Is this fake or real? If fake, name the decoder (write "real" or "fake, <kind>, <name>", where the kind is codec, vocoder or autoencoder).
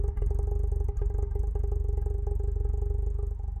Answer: real